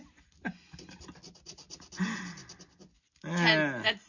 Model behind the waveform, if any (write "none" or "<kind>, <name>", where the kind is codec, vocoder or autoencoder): none